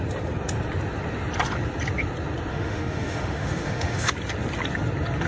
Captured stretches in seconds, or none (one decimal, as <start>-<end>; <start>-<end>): 0.0-2.5; 4.1-5.3